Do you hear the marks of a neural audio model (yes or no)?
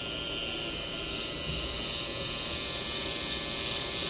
no